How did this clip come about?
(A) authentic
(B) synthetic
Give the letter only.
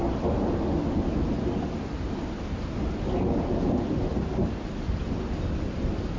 A